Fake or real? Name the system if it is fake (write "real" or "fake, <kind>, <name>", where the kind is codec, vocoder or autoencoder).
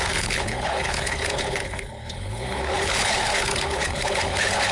fake, codec, HILCodec